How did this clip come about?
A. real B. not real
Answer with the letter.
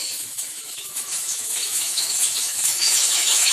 B